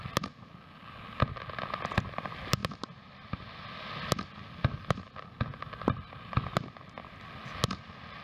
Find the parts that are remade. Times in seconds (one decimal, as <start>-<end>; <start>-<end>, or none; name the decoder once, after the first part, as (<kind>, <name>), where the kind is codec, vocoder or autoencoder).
none